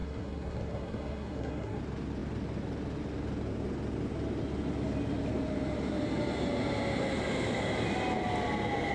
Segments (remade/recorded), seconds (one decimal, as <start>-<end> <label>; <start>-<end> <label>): 0.0-1.8 remade; 1.8-8.9 recorded